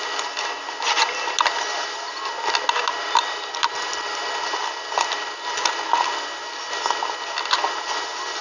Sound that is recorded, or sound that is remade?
recorded